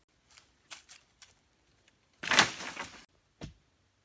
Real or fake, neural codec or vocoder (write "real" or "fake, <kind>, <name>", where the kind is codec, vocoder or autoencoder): real